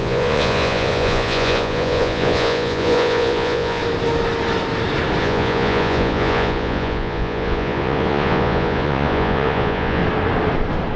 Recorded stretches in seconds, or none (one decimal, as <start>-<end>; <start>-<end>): 3.8-5.2; 10.0-11.0